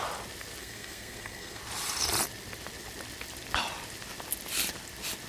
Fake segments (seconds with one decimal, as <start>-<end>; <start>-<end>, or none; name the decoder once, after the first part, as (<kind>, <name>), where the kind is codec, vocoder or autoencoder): 0.6-1.6 (codec, SNAC)

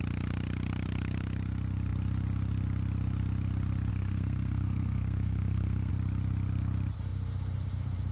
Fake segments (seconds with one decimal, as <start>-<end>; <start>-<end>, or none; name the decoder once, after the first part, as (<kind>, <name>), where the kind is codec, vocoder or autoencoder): 3.9-5.9 (codec, SNAC)

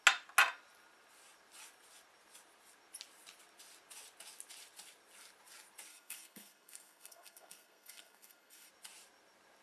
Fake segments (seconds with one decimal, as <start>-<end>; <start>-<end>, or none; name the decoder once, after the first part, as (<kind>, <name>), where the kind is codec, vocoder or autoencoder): 5.9-8.7 (codec, SNAC)

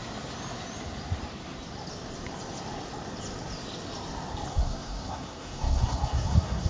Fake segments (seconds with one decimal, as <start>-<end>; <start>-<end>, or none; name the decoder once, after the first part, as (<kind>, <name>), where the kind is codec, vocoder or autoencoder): 4.5-6.7 (codec, SNAC)

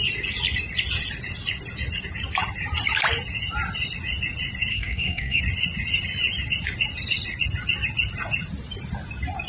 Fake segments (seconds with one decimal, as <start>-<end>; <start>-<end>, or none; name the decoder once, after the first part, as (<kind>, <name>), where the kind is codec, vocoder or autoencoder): 4.7-5.4 (codec, SNAC)

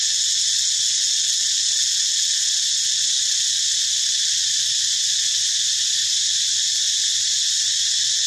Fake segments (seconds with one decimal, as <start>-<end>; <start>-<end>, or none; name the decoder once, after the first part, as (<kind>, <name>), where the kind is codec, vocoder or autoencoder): none

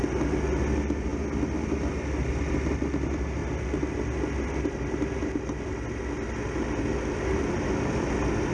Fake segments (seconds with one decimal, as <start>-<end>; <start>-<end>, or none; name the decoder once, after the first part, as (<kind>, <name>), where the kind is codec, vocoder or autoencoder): none

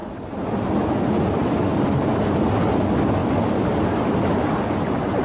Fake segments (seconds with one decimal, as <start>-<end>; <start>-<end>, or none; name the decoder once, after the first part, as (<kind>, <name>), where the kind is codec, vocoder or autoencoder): none